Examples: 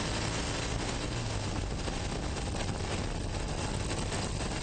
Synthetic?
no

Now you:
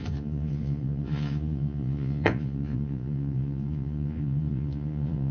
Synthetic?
yes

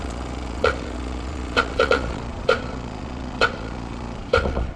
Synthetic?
yes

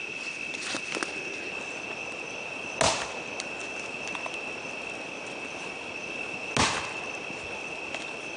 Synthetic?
no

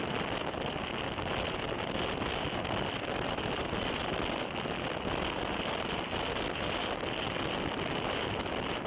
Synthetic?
no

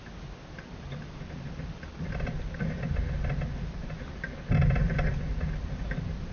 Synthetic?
no